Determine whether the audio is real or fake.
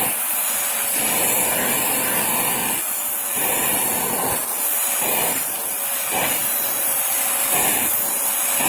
real